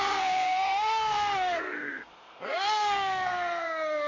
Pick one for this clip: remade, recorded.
remade